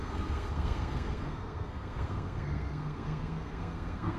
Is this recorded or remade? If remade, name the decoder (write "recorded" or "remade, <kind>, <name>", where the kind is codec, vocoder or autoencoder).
remade, codec, SNAC